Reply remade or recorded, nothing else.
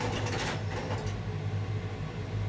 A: recorded